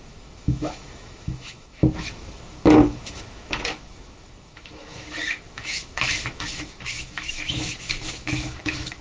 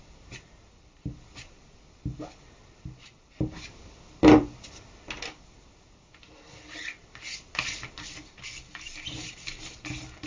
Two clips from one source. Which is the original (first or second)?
second